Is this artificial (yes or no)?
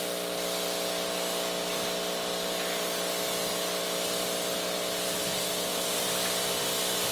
no